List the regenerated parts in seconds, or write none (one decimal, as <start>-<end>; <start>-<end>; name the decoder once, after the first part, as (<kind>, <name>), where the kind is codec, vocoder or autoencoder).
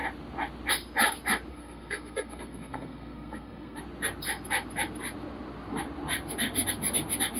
1.5-3.8 (codec, SNAC)